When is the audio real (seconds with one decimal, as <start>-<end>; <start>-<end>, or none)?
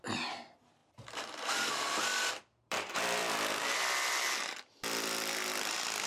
0.8-2.3